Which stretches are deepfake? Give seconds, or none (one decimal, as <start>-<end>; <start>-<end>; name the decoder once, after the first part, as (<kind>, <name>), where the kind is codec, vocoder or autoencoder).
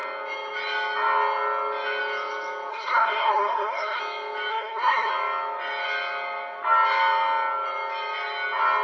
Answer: 2.7-4.0 (codec, SNAC); 4.5-5.1